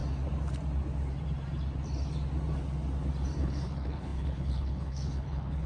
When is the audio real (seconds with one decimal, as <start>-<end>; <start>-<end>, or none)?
0.0-3.4